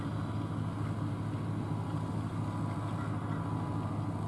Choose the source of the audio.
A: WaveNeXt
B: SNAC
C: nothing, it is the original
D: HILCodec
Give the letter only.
C